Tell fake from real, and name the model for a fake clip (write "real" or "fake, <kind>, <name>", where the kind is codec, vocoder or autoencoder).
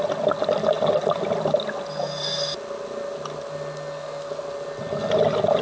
real